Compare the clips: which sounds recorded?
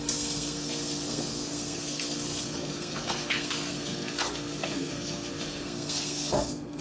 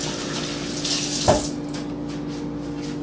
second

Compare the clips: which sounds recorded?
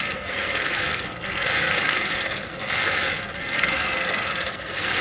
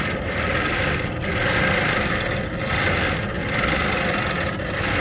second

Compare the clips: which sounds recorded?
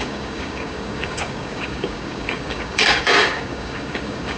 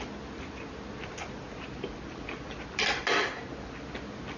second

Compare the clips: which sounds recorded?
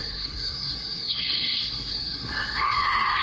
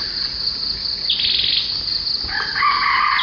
second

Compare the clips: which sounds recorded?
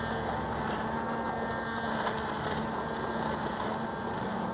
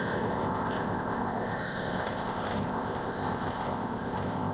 first